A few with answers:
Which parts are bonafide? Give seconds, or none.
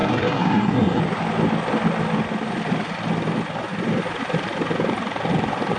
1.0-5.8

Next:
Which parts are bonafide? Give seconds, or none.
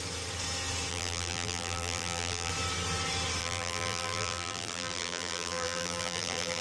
0.0-0.9; 2.5-3.4